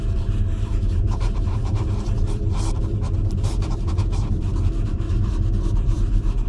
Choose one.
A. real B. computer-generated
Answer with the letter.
B